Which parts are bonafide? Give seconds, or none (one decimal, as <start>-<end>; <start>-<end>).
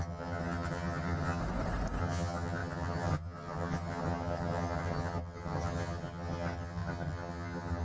1.4-2.0